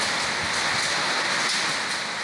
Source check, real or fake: real